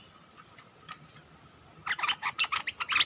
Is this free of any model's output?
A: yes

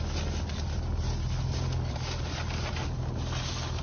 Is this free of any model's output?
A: yes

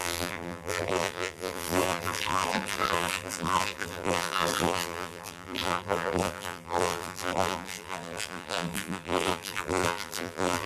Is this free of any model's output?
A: no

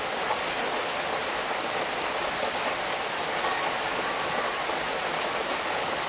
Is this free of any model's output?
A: yes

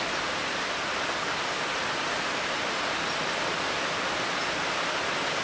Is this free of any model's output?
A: yes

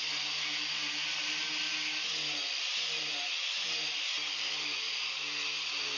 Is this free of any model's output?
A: yes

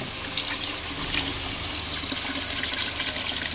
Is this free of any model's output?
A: yes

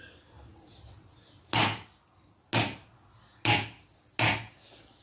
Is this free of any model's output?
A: yes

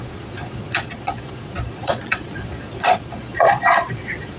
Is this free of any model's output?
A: no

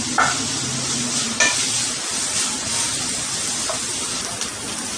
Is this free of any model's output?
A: yes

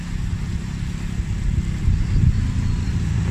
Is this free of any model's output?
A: no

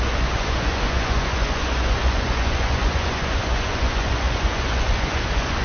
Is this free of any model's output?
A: no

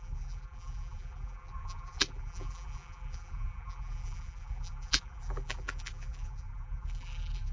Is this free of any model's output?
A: no